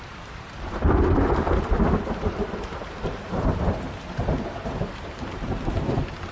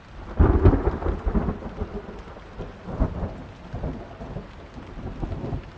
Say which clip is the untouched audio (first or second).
second